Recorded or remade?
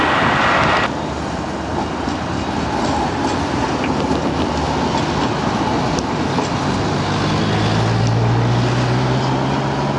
recorded